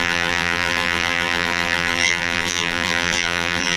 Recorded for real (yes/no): no